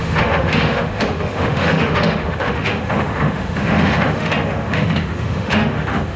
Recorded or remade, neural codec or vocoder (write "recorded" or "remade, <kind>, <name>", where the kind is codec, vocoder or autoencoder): remade, autoencoder, DAC-VAE